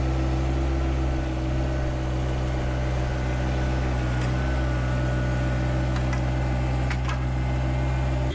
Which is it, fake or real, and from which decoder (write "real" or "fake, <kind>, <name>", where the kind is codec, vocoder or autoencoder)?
real